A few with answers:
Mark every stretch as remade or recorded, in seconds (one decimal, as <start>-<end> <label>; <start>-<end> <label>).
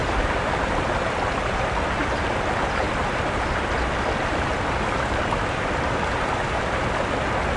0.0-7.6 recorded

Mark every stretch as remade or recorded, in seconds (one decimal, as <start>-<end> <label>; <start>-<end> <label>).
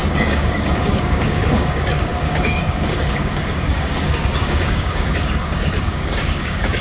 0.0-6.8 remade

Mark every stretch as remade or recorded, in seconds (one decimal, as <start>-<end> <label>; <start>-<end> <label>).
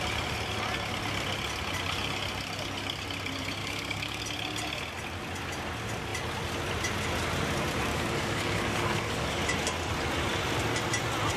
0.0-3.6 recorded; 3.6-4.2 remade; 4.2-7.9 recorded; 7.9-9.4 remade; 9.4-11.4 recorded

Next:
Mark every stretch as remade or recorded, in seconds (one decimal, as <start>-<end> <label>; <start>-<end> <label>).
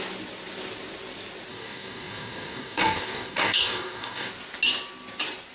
0.0-1.5 recorded; 1.5-4.3 remade; 4.3-5.5 recorded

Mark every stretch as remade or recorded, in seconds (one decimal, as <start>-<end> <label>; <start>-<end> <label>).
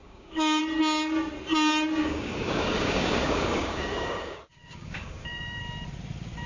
0.0-0.6 remade; 0.6-2.0 recorded; 2.0-5.6 remade; 5.6-6.5 recorded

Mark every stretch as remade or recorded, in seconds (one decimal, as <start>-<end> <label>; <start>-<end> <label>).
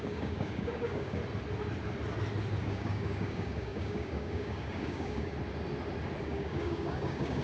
0.0-1.2 remade; 1.2-2.6 recorded; 2.6-5.3 remade; 5.3-6.2 recorded; 6.2-7.4 remade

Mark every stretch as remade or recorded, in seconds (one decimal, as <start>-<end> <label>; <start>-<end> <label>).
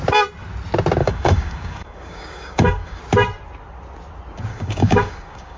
0.0-1.0 recorded; 1.0-3.0 remade; 3.0-4.5 recorded; 4.5-5.6 remade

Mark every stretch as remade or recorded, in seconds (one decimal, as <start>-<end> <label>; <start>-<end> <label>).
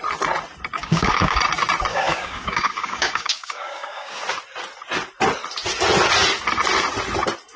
0.0-0.8 recorded; 0.8-1.4 remade; 1.4-1.9 recorded; 1.9-4.2 remade; 4.2-7.6 recorded